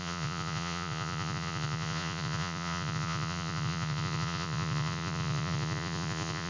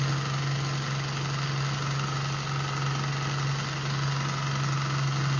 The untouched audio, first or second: second